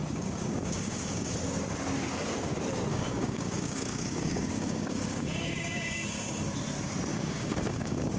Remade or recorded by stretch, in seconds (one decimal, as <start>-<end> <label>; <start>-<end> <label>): 0.0-1.3 remade; 1.3-2.9 recorded; 2.9-6.5 remade; 6.5-7.1 recorded; 7.1-8.2 remade